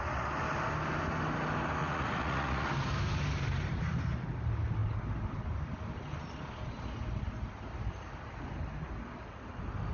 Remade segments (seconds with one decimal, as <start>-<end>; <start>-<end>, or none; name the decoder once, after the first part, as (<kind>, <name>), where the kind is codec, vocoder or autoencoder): 1.8-2.7 (vocoder, Vocos)